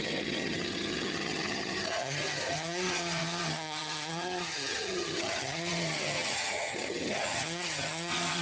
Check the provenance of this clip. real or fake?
fake